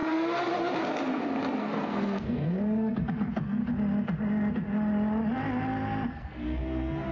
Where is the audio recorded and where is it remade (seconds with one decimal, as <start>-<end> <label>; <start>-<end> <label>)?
0.0-1.6 recorded; 1.6-3.6 remade; 3.6-6.1 recorded; 6.1-7.1 remade